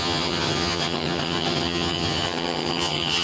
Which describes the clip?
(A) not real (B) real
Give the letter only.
A